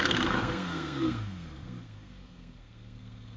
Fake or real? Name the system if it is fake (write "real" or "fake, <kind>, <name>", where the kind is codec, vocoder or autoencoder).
fake, codec, SNAC